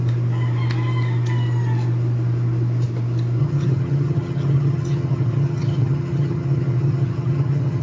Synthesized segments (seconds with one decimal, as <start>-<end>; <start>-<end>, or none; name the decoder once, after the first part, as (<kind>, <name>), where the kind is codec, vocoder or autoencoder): 3.4-7.8 (vocoder, HiFi-GAN)